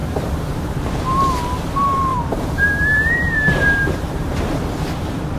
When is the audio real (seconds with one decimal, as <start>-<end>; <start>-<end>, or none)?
0.7-2.1

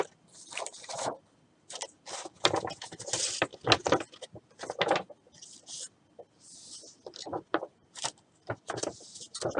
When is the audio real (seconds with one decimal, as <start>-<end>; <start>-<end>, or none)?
0.0-9.6

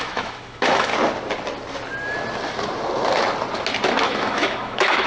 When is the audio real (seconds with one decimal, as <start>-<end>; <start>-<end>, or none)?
0.9-4.0

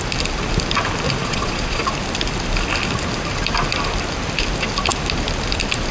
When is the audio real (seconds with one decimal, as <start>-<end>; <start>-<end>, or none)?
0.0-1.2; 1.8-5.9

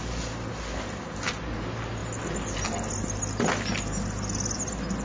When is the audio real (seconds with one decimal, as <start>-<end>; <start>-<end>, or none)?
0.0-5.0